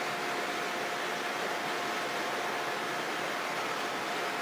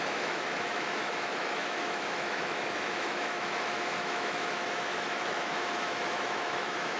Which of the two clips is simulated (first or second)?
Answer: second